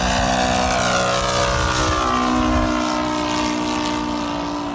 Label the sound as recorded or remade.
recorded